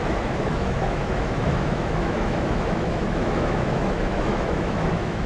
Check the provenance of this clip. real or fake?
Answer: fake